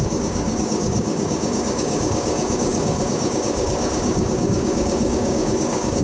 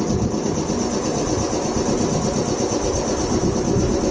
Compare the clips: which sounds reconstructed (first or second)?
first